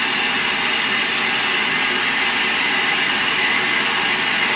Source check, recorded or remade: remade